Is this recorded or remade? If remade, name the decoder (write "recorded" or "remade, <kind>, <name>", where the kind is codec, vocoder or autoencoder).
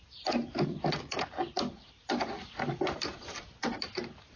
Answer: remade, vocoder, BigVGAN v2